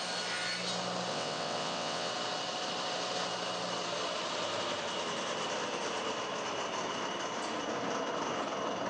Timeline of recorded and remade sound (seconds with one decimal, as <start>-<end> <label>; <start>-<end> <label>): 0.0-1.1 recorded; 1.1-2.1 remade; 2.1-8.9 recorded